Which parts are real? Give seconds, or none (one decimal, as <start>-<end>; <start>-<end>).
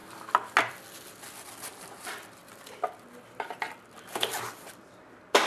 0.0-5.5